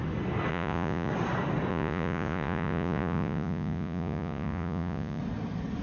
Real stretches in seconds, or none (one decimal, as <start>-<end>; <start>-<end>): 0.0-0.5; 1.1-1.7; 5.2-5.8